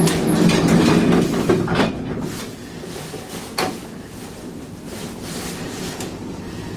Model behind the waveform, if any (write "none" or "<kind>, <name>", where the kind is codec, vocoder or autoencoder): none